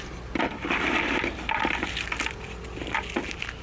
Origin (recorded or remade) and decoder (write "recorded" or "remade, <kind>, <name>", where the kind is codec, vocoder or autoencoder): recorded